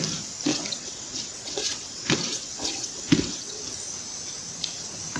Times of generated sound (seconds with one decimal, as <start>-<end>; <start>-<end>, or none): 0.5-3.6